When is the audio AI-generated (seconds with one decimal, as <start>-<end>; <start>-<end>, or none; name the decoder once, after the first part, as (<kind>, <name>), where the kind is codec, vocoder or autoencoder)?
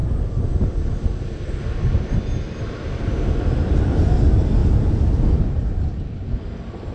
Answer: none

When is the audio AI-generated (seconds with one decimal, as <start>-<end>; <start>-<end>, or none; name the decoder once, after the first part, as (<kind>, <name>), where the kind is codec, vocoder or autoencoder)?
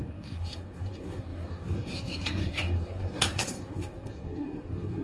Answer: 0.0-5.0 (codec, SNAC)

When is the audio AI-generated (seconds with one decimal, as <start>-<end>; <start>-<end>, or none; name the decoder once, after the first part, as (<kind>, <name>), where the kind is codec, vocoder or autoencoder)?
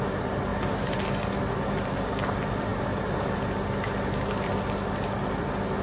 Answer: none